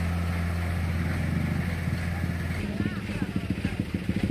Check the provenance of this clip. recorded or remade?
recorded